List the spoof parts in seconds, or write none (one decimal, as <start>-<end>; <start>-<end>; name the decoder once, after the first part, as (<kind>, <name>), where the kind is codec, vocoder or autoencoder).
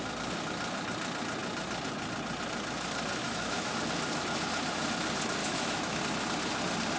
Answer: 3.2-3.7 (autoencoder, DAC-VAE); 5.4-6.0